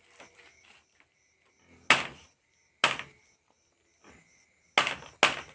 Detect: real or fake real